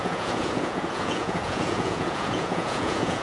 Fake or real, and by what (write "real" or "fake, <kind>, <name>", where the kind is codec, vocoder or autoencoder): fake, vocoder, Vocos